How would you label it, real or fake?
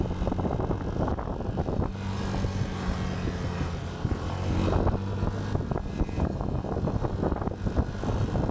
real